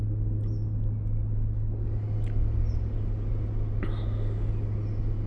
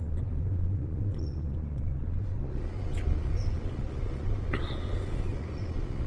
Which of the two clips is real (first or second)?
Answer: first